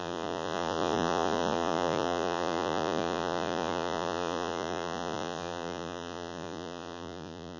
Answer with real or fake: fake